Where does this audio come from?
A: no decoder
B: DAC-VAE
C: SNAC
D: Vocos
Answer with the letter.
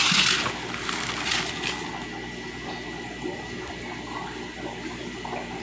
A